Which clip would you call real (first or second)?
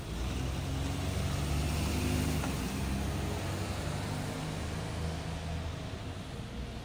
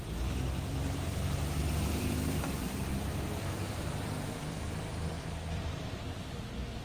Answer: first